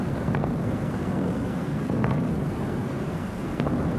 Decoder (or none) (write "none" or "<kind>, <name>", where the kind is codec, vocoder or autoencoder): codec, SNAC